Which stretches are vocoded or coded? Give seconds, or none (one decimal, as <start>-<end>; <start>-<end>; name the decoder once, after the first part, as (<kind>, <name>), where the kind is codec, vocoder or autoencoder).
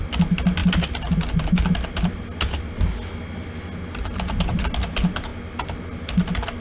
none